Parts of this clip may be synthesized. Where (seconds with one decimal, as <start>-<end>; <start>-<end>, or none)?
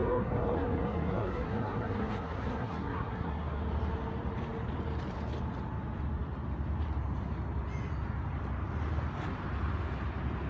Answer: 0.0-3.6